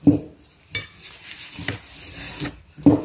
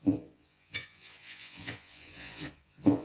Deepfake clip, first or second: second